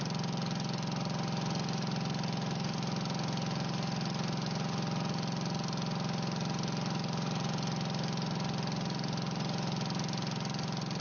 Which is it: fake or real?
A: real